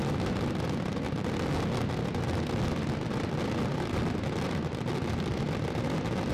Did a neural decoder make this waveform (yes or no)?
no